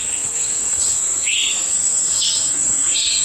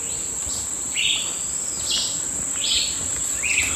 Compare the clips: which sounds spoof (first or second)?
first